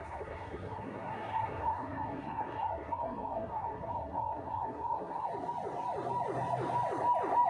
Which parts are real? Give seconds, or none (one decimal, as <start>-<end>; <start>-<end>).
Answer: 5.3-7.5